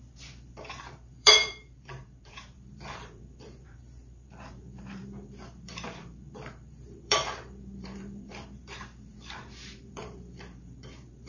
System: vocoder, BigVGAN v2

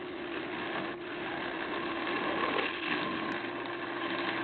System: none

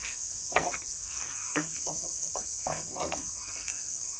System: codec, SNAC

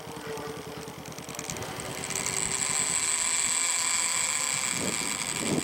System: none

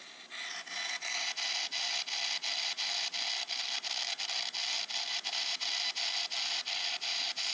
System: none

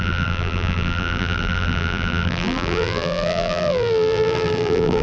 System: vocoder, BigVGAN v2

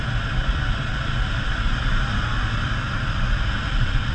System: none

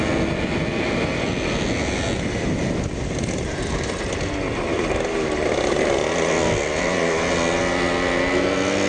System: none